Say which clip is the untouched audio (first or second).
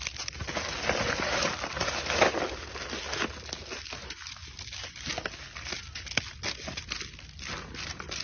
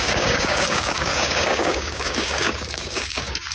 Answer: first